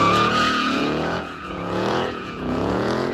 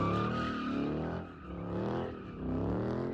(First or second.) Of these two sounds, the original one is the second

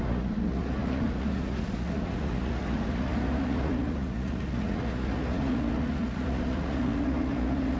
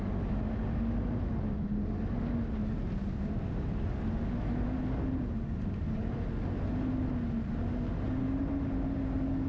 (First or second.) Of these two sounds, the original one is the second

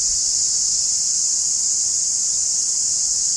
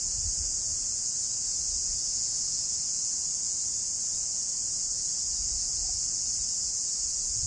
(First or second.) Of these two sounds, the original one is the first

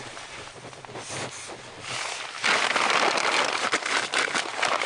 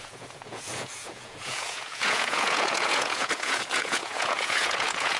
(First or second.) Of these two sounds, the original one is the first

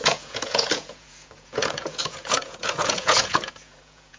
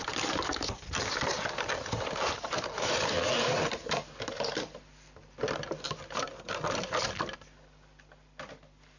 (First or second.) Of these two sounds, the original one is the second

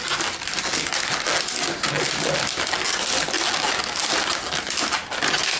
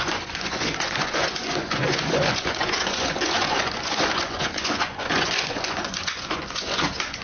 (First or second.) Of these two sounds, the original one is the first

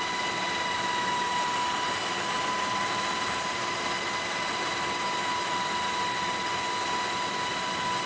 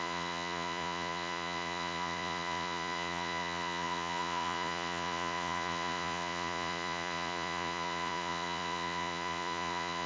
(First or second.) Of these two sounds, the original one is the first